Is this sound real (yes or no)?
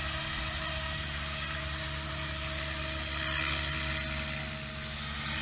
yes